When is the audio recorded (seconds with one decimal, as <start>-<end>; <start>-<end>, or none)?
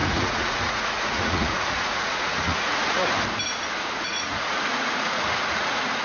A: 3.0-3.8